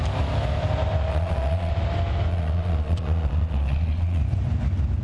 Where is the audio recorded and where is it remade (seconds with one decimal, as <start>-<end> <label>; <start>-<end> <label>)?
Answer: 0.0-1.1 recorded; 1.1-1.7 remade; 1.7-2.3 recorded; 2.3-4.2 remade; 4.2-5.0 recorded